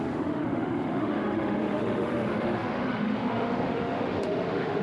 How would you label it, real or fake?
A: fake